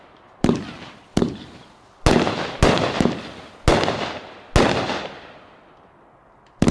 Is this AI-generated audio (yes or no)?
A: no